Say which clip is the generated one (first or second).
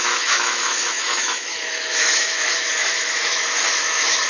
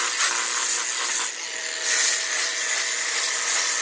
first